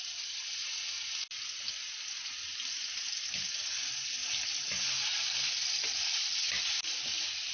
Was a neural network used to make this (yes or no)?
no